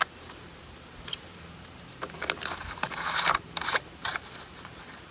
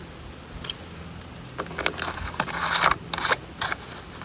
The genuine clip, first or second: second